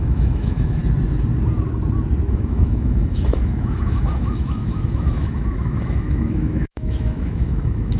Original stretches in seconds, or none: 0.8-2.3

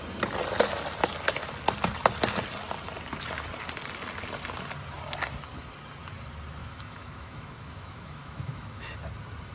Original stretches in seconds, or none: 0.0-6.6; 8.9-9.5

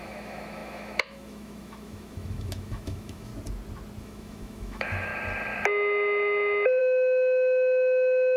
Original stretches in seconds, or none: 3.3-4.0; 5.1-6.8

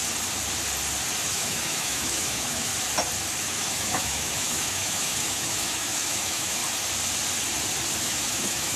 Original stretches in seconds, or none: 0.0-1.3; 2.7-3.4; 6.6-8.0

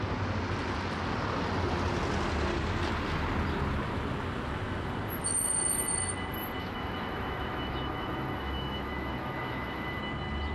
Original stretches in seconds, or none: 0.0-6.6; 10.0-10.5

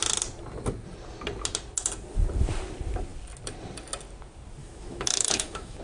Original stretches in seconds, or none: 0.0-4.6

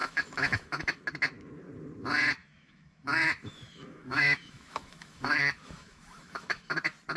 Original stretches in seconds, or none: 1.0-2.4; 6.7-7.2